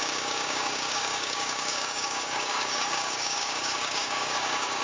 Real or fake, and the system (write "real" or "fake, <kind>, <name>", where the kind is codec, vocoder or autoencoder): fake, codec, DAC